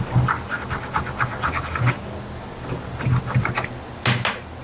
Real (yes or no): yes